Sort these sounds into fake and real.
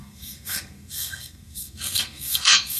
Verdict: fake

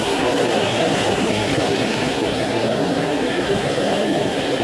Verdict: fake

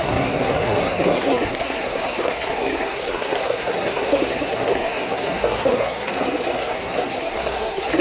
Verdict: fake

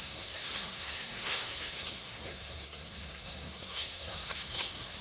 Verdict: fake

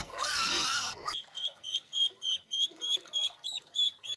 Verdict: fake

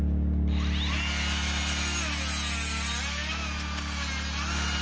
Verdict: real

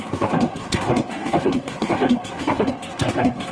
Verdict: fake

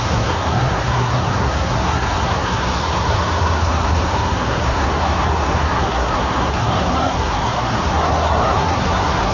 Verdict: fake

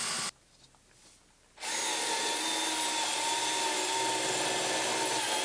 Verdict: real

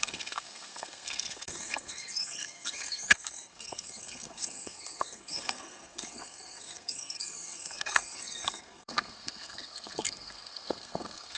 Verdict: fake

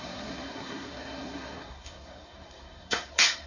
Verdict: fake